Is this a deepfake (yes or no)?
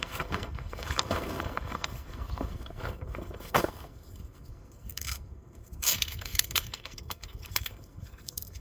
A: yes